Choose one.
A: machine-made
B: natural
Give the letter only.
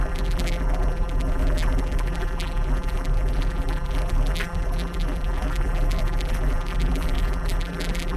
A